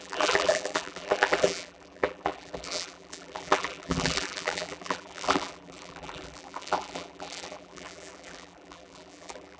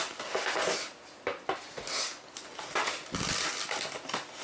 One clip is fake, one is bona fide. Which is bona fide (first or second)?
second